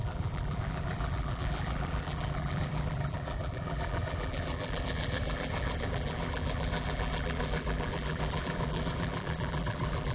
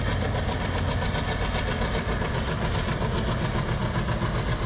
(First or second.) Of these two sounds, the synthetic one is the first